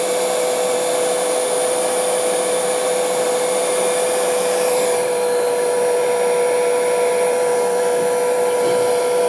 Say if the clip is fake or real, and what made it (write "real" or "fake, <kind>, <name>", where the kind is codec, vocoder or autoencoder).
real